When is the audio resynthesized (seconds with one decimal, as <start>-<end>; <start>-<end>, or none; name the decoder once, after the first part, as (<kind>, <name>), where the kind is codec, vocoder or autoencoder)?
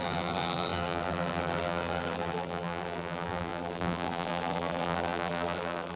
0.0-6.0 (vocoder, BigVGAN v2)